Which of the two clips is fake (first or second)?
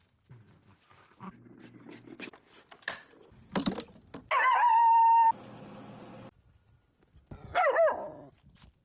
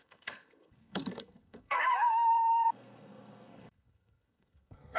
second